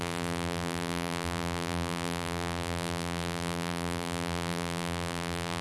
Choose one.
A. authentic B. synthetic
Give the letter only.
B